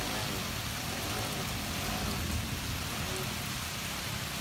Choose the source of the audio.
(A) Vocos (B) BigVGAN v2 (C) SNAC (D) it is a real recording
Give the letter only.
D